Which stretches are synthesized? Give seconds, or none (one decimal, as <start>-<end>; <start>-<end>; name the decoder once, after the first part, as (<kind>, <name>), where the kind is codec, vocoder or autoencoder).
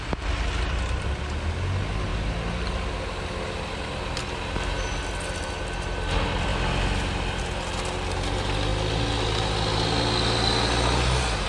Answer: none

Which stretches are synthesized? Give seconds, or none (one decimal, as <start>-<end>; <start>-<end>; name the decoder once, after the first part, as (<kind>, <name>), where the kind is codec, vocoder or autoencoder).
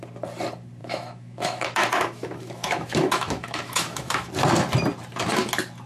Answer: 0.8-4.3 (autoencoder, DAC-VAE)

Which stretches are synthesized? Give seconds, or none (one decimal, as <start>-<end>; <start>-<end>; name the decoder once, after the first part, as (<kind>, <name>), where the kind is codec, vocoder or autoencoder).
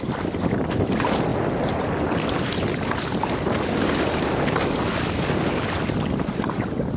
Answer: none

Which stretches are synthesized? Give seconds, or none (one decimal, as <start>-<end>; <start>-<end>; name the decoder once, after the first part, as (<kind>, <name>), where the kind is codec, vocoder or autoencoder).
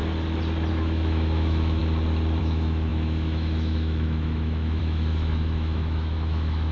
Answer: 0.7-1.8 (autoencoder, DAC-VAE); 2.4-6.7